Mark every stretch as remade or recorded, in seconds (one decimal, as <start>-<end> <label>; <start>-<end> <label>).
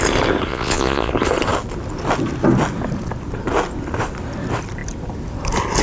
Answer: 0.0-0.5 recorded; 0.5-1.1 remade; 1.1-5.8 recorded